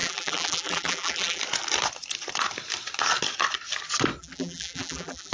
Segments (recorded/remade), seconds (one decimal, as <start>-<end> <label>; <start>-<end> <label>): 0.0-1.4 remade; 1.4-4.2 recorded; 4.2-5.3 remade